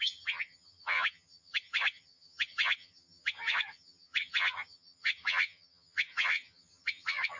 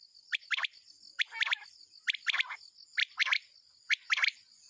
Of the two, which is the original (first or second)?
second